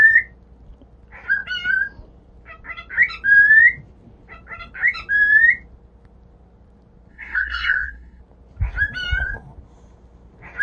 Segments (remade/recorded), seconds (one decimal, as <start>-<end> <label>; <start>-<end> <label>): 0.0-7.1 recorded; 7.1-8.2 remade; 8.2-10.6 recorded